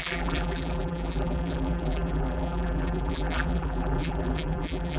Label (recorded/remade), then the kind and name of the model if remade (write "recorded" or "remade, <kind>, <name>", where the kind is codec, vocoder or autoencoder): remade, vocoder, BigVGAN v2